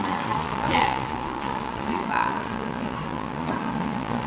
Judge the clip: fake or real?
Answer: fake